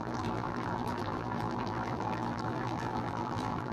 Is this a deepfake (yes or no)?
yes